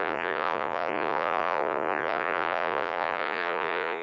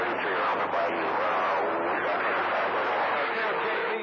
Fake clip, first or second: first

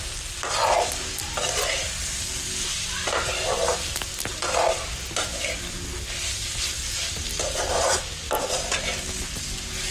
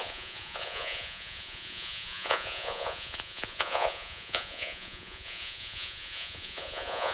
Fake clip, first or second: second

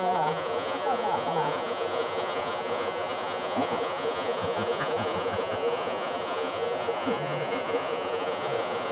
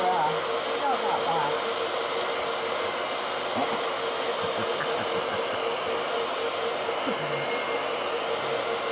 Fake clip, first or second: first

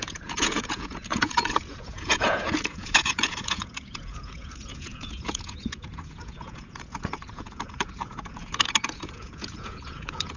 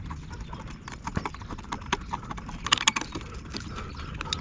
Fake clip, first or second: first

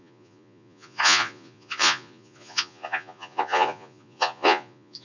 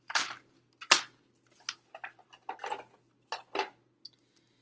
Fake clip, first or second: first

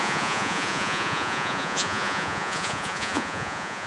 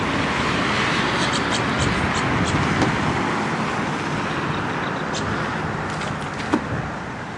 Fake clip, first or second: first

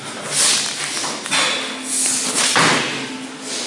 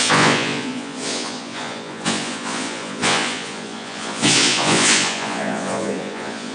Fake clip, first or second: second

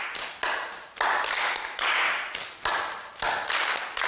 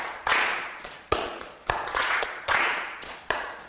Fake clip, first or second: second